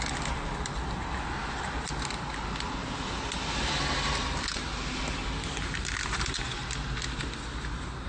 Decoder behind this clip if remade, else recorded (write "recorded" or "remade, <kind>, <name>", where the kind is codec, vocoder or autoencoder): recorded